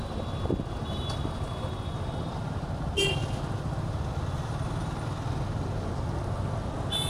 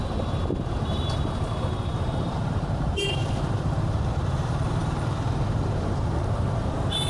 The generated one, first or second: second